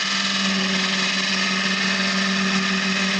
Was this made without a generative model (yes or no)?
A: yes